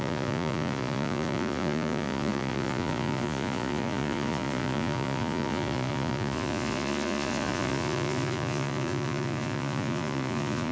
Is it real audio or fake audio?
fake